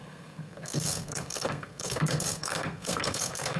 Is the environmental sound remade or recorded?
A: remade